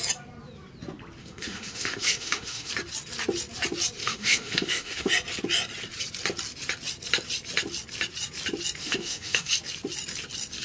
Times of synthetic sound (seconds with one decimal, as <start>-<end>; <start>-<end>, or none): 1.2-2.7; 4.0-5.1; 8.8-9.5